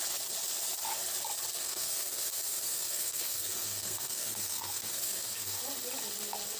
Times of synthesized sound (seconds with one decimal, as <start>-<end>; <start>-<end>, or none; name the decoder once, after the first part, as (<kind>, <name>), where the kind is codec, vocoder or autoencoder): 1.6-5.6 (codec, SNAC)